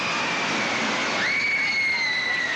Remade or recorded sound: recorded